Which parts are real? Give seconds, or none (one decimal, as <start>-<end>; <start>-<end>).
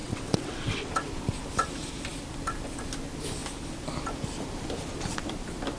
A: 0.9-5.8